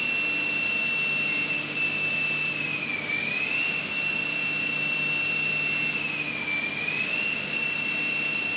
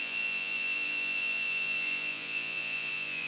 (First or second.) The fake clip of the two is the second